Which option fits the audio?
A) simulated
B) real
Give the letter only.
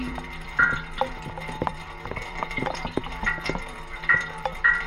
A